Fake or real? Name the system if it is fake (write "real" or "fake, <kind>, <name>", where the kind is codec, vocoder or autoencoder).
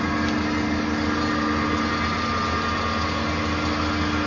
real